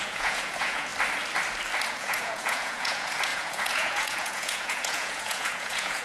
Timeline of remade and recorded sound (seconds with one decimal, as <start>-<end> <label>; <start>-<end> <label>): 0.0-0.9 remade; 0.9-1.9 recorded; 1.9-6.0 remade